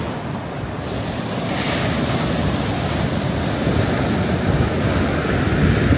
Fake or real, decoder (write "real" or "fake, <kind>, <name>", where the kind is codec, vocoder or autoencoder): real